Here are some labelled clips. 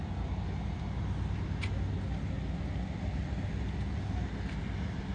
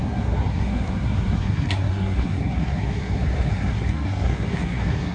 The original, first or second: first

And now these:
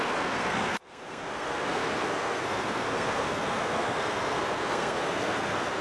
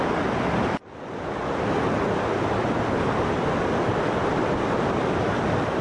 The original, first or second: second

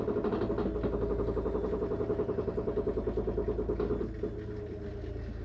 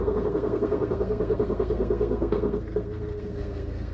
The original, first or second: first